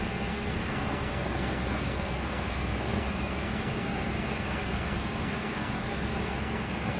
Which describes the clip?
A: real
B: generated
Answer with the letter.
B